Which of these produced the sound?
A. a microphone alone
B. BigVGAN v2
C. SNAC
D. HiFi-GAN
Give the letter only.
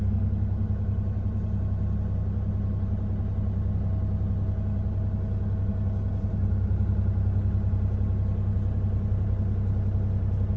A